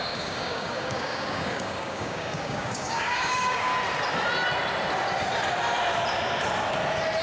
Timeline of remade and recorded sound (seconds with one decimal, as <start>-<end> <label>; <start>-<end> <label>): 0.0-3.7 remade; 3.7-7.2 recorded